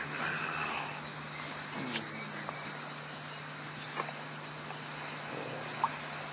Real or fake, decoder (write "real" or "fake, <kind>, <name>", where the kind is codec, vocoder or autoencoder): real